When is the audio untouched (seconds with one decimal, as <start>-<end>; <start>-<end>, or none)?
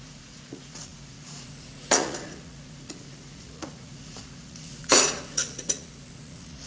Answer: none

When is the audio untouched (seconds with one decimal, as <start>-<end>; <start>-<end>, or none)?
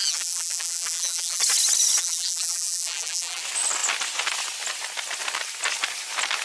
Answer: 1.4-2.0; 3.4-6.4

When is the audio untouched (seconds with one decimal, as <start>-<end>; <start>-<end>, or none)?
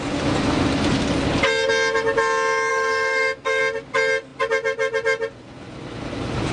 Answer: 0.0-2.7; 3.6-6.5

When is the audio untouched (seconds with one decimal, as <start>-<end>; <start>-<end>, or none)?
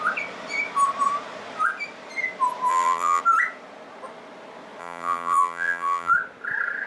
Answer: 0.0-2.7; 3.2-4.8; 6.1-6.9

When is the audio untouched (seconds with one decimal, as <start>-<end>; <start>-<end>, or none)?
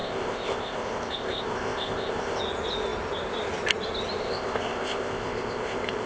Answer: 2.4-4.2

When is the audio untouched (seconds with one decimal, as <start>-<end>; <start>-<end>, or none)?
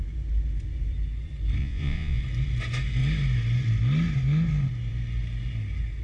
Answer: 0.0-1.6; 2.2-6.0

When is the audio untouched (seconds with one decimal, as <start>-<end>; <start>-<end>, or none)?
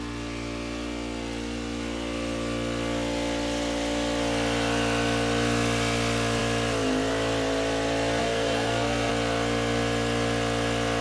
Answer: 0.0-8.2; 9.1-11.0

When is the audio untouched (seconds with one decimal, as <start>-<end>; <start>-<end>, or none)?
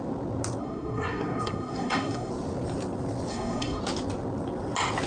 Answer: 0.0-0.6; 2.3-3.3; 3.8-5.1